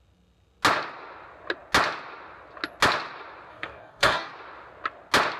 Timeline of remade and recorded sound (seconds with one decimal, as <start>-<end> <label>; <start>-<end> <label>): 0.0-3.5 recorded; 3.5-4.3 remade; 4.3-5.4 recorded